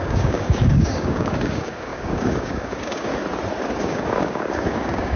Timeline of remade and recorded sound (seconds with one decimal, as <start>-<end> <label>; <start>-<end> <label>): 0.0-3.1 remade; 3.1-3.8 recorded; 3.8-5.2 remade